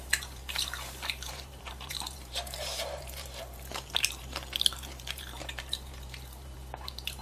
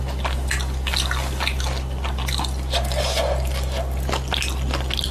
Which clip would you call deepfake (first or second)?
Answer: first